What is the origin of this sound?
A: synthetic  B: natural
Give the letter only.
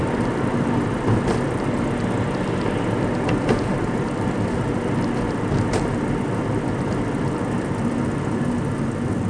B